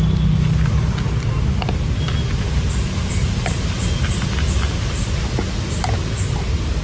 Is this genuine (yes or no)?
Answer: yes